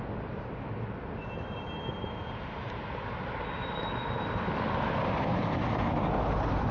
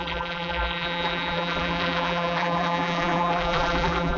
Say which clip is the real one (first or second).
first